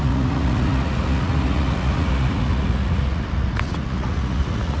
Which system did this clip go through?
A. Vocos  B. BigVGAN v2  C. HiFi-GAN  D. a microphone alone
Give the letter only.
A